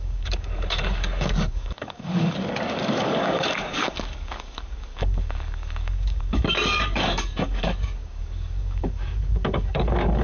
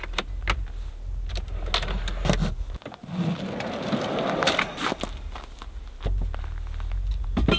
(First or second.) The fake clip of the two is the first